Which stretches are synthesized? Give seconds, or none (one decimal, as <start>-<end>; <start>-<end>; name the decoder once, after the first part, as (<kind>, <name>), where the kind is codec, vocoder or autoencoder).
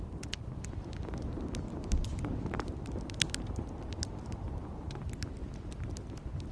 none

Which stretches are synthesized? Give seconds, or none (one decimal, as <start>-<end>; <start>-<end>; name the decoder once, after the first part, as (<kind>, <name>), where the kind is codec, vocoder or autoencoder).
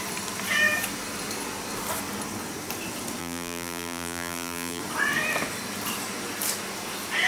3.2-4.8 (vocoder, BigVGAN v2)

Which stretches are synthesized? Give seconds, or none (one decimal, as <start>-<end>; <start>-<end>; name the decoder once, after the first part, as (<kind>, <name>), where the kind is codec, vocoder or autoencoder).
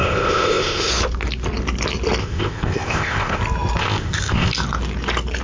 0.0-0.9 (codec, ZipCodec); 2.2-3.4; 3.8-4.5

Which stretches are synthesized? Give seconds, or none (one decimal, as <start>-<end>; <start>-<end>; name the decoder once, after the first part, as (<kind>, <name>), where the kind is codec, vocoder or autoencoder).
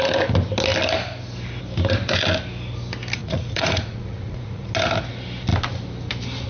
3.2-4.7 (vocoder, Vocos)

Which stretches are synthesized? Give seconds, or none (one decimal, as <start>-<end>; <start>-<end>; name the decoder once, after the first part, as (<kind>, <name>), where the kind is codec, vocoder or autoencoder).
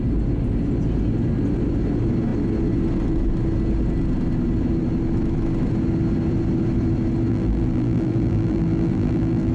7.3-9.5 (vocoder, BigVGAN v2)